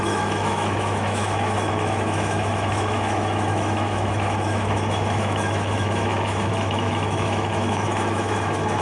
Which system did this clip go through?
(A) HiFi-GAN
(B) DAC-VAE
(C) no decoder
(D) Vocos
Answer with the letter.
B